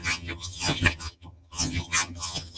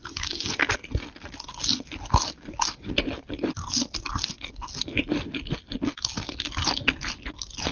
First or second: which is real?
second